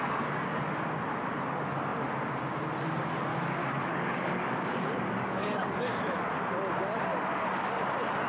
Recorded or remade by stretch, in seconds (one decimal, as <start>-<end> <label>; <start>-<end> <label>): 0.0-3.3 recorded; 3.3-6.3 remade; 6.3-8.3 recorded